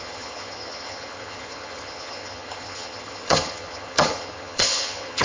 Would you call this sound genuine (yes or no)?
no